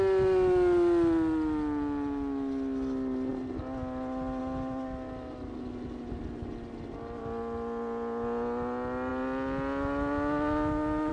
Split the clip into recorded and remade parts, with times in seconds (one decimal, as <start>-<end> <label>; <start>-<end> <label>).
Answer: 0.0-11.1 recorded